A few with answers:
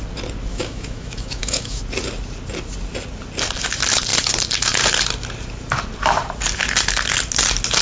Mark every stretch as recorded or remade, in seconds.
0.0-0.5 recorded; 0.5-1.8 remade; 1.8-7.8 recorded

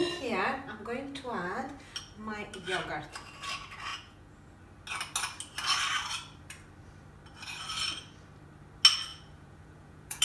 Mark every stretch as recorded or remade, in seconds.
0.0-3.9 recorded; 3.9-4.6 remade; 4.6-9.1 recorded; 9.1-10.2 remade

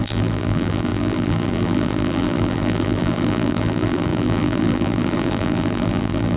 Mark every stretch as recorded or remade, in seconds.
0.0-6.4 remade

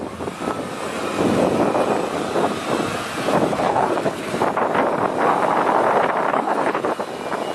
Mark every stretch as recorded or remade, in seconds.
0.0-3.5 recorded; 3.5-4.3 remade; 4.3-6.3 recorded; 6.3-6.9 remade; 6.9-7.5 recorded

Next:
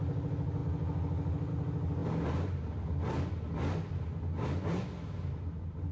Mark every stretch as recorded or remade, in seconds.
0.0-5.9 recorded

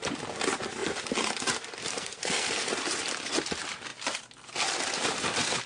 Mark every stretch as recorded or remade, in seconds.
0.0-1.9 recorded; 1.9-2.7 remade; 2.7-5.7 recorded

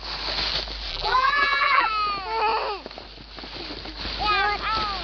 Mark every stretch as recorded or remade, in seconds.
0.0-0.9 recorded; 0.9-1.9 remade; 1.9-5.0 recorded